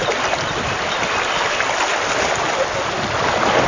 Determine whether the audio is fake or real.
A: real